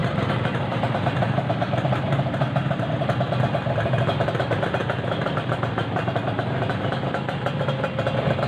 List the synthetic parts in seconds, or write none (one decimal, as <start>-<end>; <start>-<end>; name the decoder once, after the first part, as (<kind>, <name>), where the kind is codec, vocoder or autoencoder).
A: 0.0-2.9 (vocoder, BigVGAN v2); 4.8-5.8